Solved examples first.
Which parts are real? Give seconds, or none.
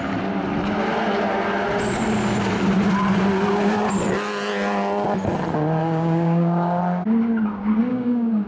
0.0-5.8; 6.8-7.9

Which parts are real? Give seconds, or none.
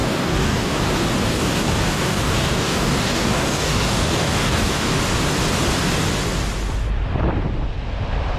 0.8-1.3; 5.0-8.4